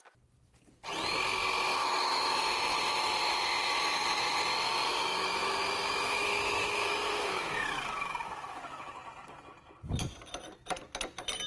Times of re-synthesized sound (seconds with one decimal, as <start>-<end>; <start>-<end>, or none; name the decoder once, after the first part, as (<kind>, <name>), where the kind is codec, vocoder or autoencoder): 1.7-4.4 (autoencoder, DAC-VAE); 4.9-8.9